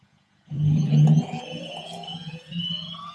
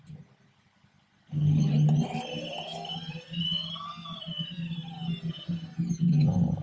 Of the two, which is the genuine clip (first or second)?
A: second